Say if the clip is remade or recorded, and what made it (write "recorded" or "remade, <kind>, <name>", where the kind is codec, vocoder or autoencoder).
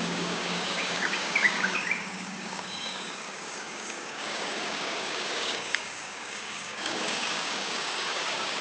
remade, codec, DAC